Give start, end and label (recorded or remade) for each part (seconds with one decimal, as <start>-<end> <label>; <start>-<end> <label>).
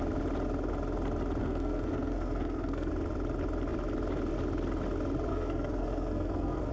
0.0-1.4 recorded; 1.4-2.9 remade; 2.9-5.3 recorded; 5.3-6.7 remade